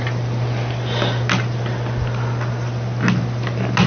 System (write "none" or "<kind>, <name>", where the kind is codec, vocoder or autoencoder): none